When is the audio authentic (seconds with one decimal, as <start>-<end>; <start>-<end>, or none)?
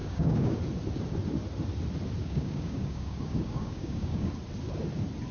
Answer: 0.6-2.2; 4.3-5.3